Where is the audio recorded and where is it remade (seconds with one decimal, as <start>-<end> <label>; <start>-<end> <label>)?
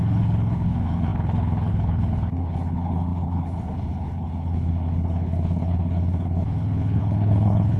0.0-7.8 remade